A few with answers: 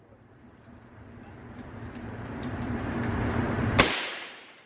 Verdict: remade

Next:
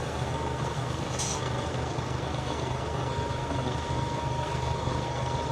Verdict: remade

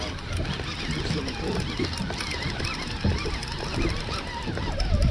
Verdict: recorded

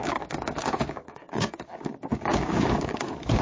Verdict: remade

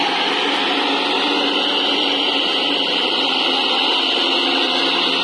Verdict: recorded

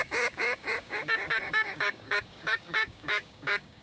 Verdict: remade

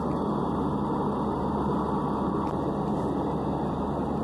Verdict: recorded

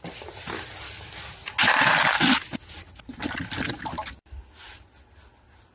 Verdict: recorded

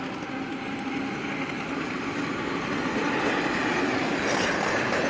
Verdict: recorded